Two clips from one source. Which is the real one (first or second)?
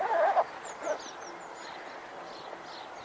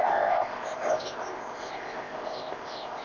first